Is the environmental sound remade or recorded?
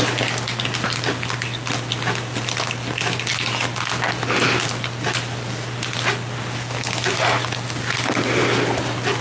recorded